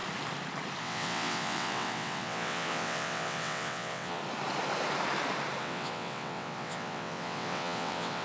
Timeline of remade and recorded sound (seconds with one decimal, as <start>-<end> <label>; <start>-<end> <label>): 0.0-0.8 recorded; 0.8-4.2 remade; 4.2-5.6 recorded; 5.6-8.2 remade